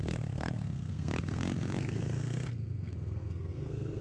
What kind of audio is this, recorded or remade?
remade